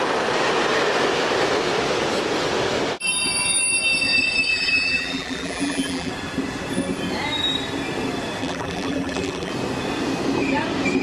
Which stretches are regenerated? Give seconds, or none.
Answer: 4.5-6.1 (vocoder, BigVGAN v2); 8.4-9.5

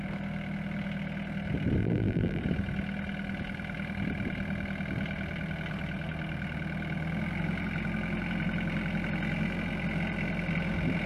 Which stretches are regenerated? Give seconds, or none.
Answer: 1.8-2.4 (vocoder, BigVGAN v2)

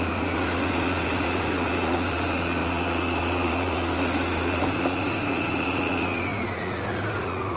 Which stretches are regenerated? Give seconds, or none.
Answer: 0.0-7.6 (vocoder, Vocos)